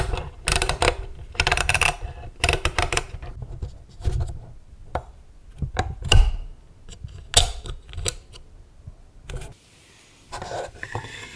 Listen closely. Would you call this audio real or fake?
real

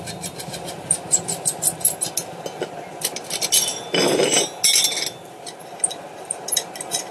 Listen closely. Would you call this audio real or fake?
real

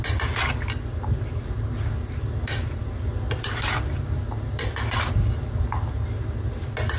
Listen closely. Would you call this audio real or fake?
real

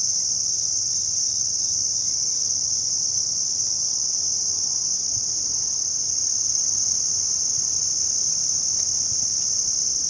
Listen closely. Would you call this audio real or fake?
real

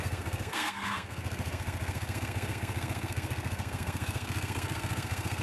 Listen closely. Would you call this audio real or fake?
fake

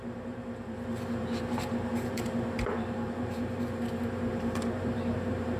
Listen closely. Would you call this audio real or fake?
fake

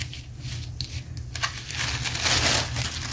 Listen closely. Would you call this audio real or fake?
real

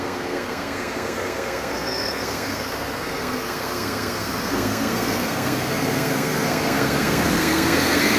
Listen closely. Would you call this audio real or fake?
fake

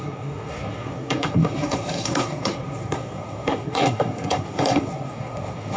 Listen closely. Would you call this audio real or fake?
fake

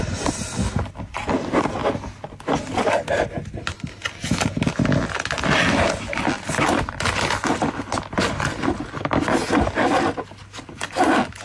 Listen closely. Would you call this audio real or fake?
real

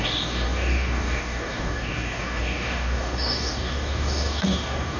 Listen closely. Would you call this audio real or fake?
fake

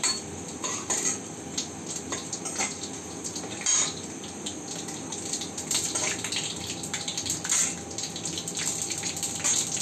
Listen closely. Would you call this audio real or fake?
real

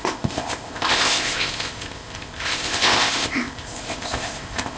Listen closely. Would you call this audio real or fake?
fake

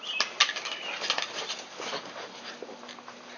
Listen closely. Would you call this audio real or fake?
real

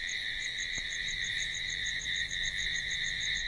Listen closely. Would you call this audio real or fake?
real